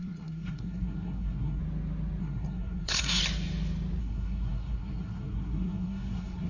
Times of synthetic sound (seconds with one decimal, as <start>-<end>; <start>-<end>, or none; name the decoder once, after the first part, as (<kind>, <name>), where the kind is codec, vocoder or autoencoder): 0.0-1.6 (codec, SNAC); 2.2-3.2; 4.0-6.5